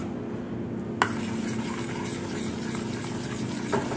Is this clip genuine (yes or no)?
yes